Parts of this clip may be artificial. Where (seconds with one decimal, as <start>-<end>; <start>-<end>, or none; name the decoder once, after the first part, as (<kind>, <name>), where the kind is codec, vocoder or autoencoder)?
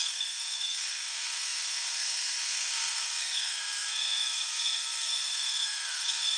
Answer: 0.0-6.4 (codec, SNAC)